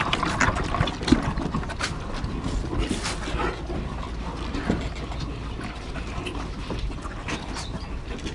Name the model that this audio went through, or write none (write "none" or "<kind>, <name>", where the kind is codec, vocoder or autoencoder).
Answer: none